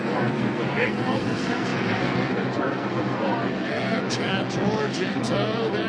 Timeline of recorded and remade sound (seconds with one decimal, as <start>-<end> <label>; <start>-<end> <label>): 0.0-5.9 remade